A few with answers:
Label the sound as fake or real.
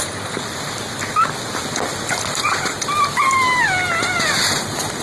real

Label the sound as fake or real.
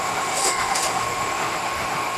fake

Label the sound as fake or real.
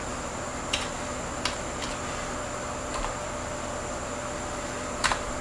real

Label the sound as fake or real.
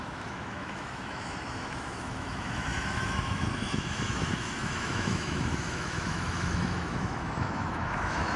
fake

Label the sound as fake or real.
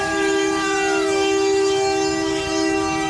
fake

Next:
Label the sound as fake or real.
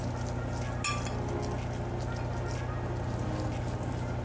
real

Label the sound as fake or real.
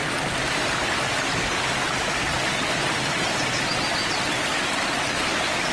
real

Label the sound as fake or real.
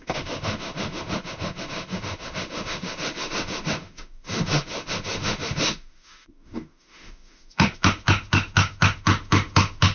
fake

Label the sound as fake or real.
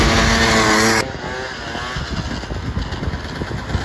real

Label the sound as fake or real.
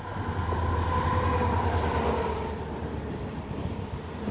real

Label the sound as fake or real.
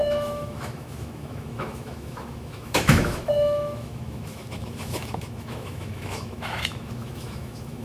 fake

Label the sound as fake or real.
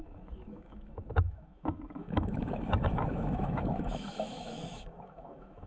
fake